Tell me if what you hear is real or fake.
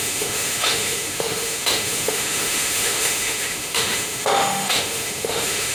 fake